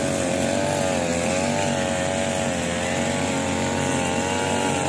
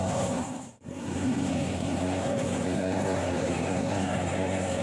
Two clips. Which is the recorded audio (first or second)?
first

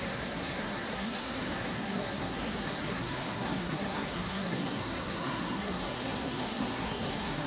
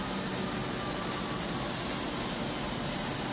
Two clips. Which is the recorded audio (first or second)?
second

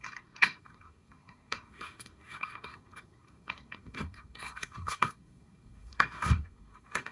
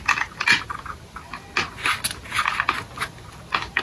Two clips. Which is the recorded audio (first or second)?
second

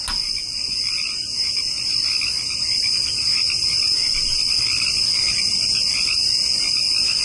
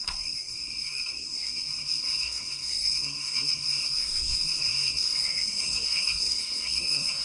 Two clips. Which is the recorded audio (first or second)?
first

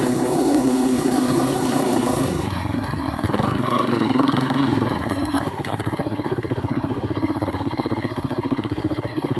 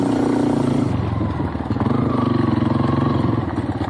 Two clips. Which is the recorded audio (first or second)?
second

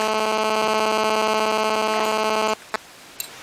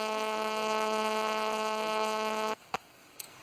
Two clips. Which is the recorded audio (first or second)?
first